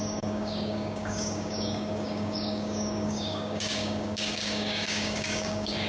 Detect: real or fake fake